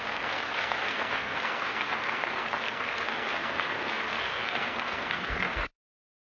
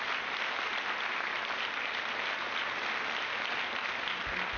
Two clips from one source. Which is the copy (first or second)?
first